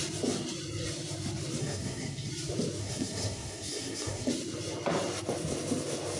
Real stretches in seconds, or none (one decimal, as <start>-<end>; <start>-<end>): 0.0-1.6; 2.3-2.8; 4.3-6.2